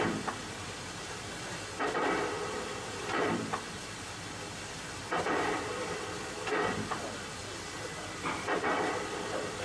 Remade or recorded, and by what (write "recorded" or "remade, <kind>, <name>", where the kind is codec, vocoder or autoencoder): remade, vocoder, BigVGAN v2